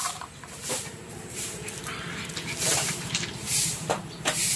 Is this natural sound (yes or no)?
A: no